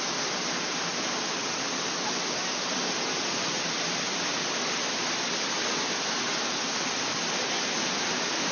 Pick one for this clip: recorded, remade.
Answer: recorded